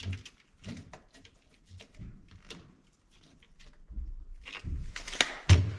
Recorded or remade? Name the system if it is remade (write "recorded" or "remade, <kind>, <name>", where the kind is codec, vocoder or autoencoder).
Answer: recorded